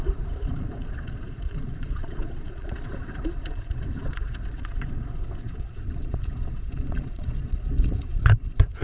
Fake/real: fake